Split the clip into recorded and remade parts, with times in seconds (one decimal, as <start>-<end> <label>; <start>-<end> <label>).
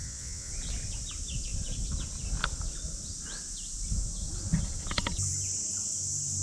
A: 0.0-0.5 remade; 0.5-6.4 recorded